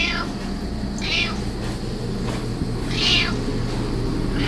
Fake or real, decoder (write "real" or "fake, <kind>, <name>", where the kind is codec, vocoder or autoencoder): real